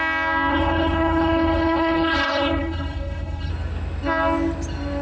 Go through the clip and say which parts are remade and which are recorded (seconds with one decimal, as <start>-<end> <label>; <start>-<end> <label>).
0.0-0.5 recorded; 0.5-3.5 remade; 3.5-5.0 recorded